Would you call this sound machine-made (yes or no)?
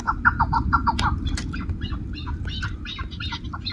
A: no